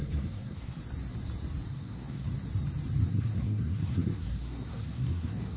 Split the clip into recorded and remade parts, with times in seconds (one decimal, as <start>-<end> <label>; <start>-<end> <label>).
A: 0.0-0.8 remade; 0.8-1.7 recorded; 1.7-2.3 remade; 2.3-3.1 recorded; 3.1-5.6 remade